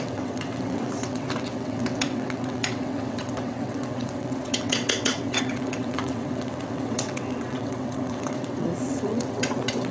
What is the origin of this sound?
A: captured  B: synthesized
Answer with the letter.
B